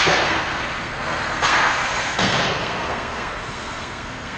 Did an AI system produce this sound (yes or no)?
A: yes